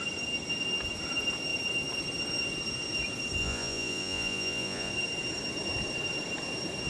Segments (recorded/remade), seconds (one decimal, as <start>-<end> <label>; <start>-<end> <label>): 0.0-3.4 recorded; 3.4-4.9 remade; 4.9-6.9 recorded